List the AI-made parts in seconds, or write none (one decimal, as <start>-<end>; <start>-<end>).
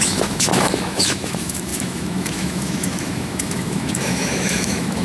0.0-5.0